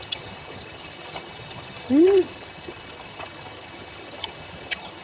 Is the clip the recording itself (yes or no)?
no